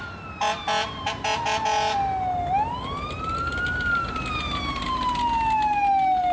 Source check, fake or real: real